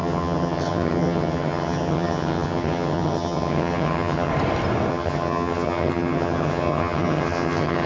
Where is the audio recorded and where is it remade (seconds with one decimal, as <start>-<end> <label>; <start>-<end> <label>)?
0.0-4.3 remade; 4.3-4.9 recorded; 4.9-7.9 remade